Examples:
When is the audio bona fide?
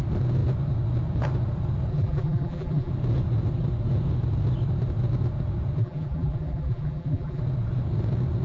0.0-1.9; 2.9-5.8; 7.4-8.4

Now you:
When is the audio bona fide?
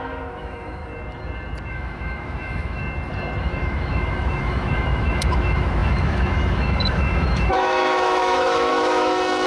0.8-1.7; 2.8-3.4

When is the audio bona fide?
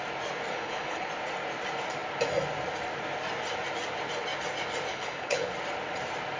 0.0-0.5; 1.1-4.9; 5.5-6.4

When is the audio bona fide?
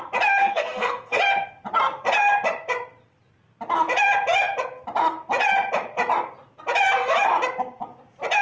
0.0-0.4; 1.2-8.4